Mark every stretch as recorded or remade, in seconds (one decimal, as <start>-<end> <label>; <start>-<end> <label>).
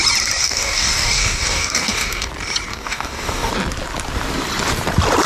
0.0-0.4 recorded; 0.4-2.3 remade; 2.3-2.7 recorded; 2.7-3.5 remade; 3.5-5.3 recorded